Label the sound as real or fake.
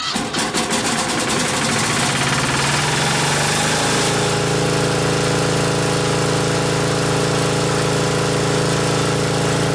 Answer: real